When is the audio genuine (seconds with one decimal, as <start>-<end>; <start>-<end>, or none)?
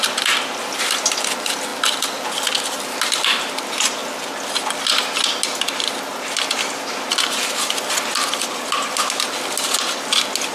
0.0-10.5